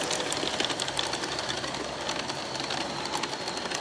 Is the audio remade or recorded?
recorded